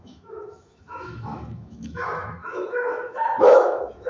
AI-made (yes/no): yes